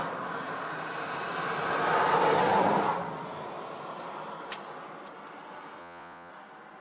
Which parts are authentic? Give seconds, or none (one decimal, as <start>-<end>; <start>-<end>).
0.0-5.8; 6.3-6.8